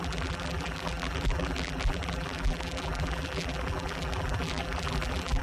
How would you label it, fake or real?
fake